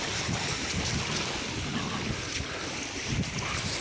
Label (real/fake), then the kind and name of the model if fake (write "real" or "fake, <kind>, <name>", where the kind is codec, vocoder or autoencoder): real